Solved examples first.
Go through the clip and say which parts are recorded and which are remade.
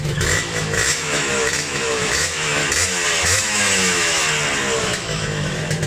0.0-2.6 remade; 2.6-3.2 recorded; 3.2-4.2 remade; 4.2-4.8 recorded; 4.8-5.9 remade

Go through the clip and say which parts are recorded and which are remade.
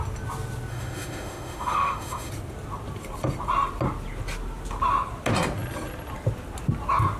0.0-0.7 recorded; 0.7-2.3 remade; 2.3-7.2 recorded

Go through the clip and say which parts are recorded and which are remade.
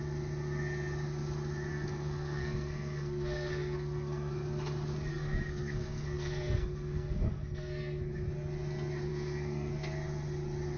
0.0-1.7 recorded; 1.7-4.3 remade; 4.3-5.1 recorded; 5.1-8.0 remade; 8.0-9.1 recorded; 9.1-9.7 remade; 9.7-10.8 recorded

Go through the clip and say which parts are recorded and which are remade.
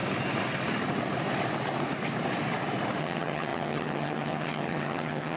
0.0-3.0 recorded; 3.0-5.4 remade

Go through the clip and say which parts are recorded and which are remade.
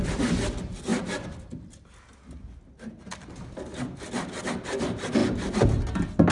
0.0-6.3 recorded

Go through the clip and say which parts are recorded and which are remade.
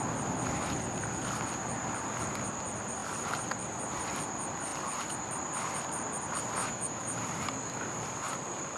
0.0-6.6 recorded; 6.6-7.2 remade; 7.2-8.8 recorded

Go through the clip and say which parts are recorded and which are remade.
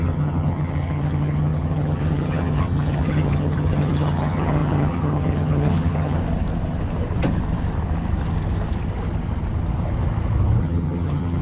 0.0-6.2 remade; 6.2-10.6 recorded; 10.6-11.4 remade